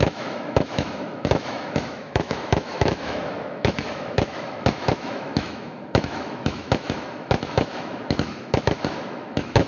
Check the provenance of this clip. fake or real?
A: fake